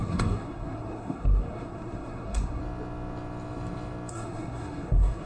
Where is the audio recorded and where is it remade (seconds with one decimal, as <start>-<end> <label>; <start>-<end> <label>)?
0.0-2.6 remade; 2.6-4.1 recorded; 4.1-5.3 remade